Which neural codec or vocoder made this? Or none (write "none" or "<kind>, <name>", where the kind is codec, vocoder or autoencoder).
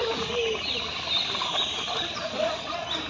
none